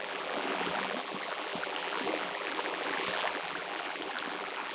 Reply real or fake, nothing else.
fake